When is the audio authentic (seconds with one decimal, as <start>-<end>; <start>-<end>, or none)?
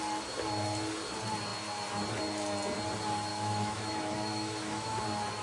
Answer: 0.0-3.3; 5.0-5.4